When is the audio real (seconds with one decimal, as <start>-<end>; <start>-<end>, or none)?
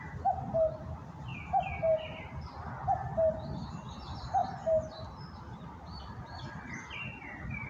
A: 0.0-7.7